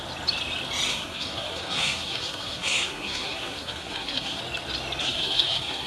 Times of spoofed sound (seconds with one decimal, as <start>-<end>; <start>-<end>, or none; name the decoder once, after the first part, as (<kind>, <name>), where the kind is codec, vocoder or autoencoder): 0.9-4.4 (codec, SNAC); 5.0-5.9